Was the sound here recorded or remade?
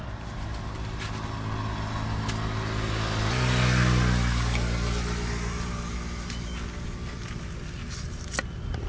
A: recorded